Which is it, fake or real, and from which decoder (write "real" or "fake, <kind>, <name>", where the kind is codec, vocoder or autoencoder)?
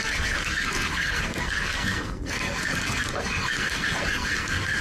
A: fake, codec, SNAC